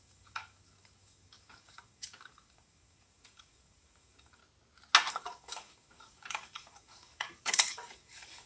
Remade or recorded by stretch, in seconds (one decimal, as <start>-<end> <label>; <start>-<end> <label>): 0.0-4.4 remade; 4.4-5.1 recorded; 5.1-8.5 remade